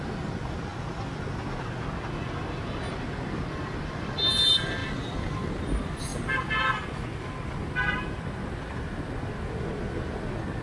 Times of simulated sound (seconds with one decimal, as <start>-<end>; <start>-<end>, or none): none